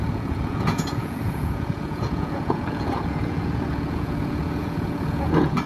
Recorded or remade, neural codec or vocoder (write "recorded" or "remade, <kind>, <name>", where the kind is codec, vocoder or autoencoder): remade, vocoder, Vocos